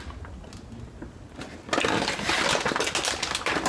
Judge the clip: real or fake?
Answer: real